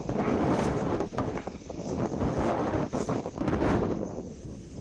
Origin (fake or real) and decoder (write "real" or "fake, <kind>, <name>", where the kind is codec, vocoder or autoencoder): fake, autoencoder, DAC-VAE